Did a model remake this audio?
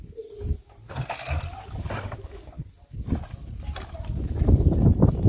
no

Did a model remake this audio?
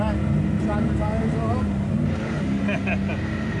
no